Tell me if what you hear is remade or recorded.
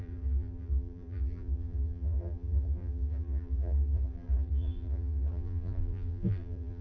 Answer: remade